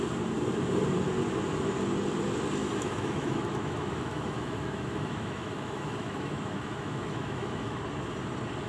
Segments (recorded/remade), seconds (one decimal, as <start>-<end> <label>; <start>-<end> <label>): 0.0-2.6 recorded; 2.6-7.8 remade; 7.8-8.7 recorded